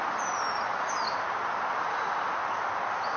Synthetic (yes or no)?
no